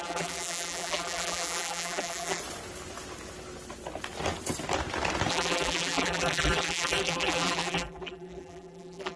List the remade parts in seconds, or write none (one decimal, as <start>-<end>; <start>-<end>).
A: 0.0-2.4; 5.3-9.2